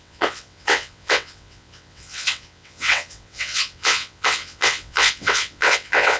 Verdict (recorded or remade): remade